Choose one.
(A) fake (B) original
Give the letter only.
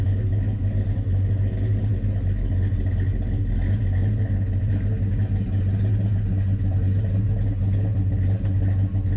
B